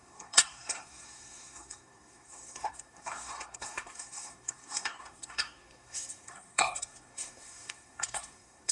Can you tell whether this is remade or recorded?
remade